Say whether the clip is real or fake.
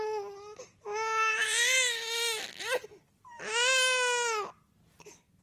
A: real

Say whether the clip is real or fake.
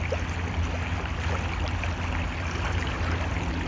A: real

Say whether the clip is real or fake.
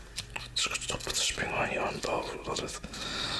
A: real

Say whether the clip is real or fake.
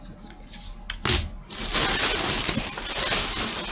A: real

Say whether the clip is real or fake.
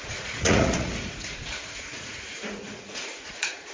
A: fake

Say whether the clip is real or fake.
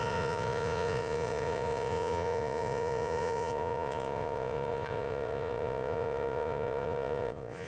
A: fake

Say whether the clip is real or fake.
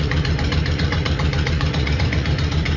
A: fake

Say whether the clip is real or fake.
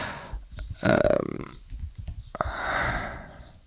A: fake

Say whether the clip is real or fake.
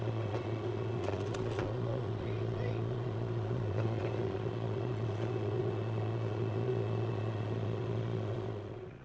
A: fake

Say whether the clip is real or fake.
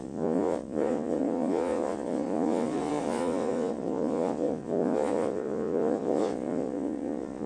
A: fake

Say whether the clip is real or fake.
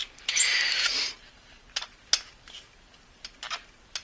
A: real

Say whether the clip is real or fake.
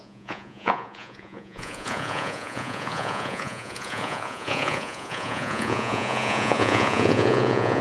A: fake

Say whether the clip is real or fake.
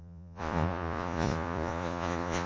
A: fake